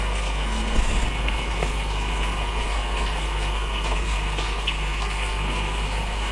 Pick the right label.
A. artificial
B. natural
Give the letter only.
A